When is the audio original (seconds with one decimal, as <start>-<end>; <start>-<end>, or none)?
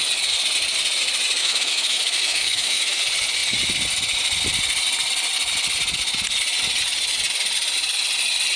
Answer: 0.0-1.4; 3.0-8.6